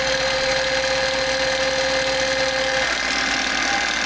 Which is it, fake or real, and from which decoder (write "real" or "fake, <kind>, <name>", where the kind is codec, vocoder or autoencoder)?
real